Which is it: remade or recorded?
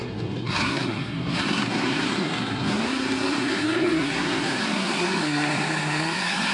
remade